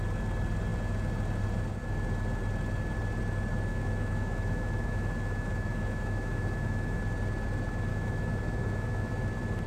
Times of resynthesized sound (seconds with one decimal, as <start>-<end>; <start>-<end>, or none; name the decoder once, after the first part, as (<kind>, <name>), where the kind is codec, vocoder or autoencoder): 3.7-7.0 (autoencoder, DAC-VAE); 7.9-9.1